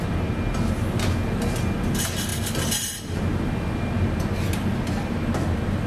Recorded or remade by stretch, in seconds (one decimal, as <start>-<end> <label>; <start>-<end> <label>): 0.0-5.9 recorded